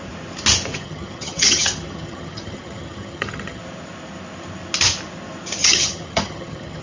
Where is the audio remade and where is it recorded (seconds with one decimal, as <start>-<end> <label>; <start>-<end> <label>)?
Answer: 0.0-0.7 recorded; 0.7-3.6 remade; 3.6-5.6 recorded; 5.6-6.8 remade